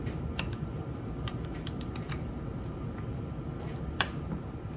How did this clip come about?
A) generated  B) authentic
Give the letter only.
A